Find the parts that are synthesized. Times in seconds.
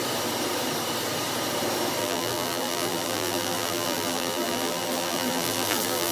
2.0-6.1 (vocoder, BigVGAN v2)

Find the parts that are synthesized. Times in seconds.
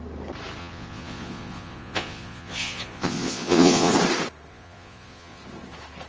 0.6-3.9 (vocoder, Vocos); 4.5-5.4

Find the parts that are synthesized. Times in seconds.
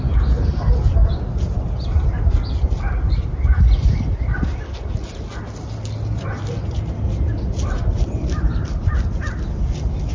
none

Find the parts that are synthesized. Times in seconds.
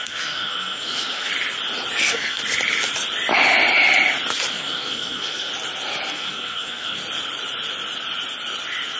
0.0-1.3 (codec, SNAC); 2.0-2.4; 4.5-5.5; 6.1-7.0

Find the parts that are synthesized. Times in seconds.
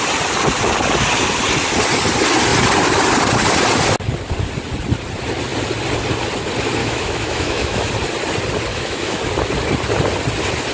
6.8-7.9 (autoencoder, DAC-VAE); 8.7-9.2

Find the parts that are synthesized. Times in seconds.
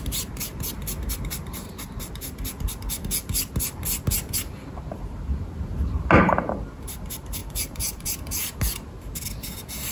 7.4-8.6 (vocoder, BigVGAN v2)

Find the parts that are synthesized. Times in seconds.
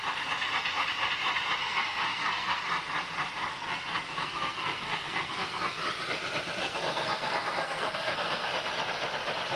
1.6-2.6 (codec, SNAC); 3.5-5.8; 6.6-8.5